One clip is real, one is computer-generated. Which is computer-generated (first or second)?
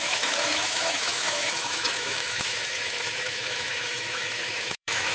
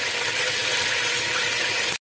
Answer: first